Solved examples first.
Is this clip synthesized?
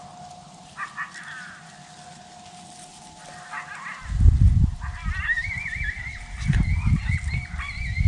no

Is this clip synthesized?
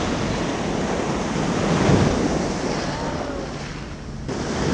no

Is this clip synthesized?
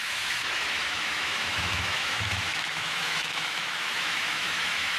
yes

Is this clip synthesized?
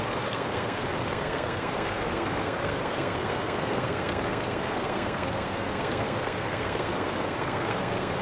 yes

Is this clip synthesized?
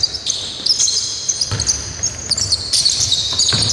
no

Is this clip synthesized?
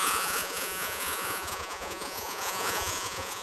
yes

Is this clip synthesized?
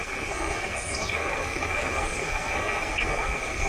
yes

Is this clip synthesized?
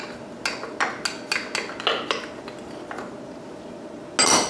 no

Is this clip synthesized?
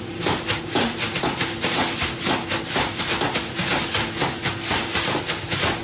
no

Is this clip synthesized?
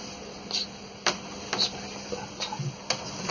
no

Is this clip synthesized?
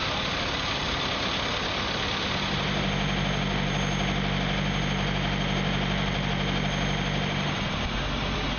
no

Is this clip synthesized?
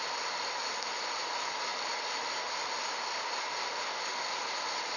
no